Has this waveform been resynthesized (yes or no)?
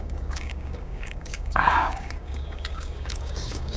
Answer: yes